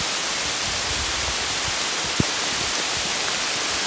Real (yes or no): yes